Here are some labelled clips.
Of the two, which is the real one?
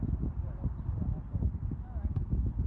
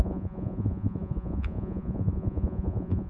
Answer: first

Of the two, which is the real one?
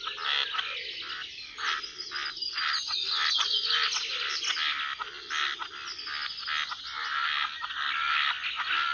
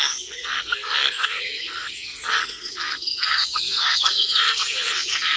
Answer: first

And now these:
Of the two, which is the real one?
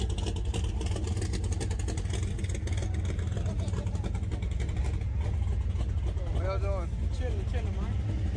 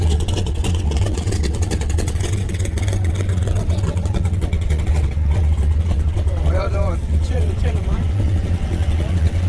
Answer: first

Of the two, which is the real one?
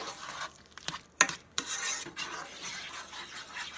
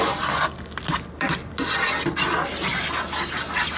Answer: second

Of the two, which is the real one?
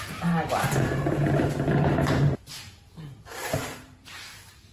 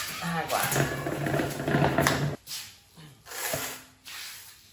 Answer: second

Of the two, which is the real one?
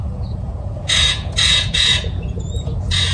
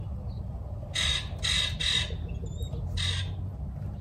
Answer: second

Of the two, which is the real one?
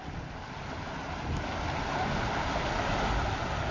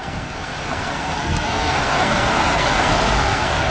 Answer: first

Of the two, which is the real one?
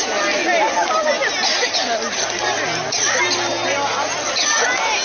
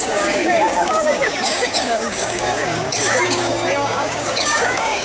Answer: first